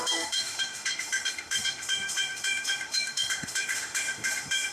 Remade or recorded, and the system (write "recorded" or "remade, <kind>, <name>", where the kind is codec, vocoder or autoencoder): remade, autoencoder, DAC-VAE